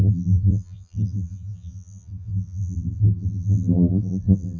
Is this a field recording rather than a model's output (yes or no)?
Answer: no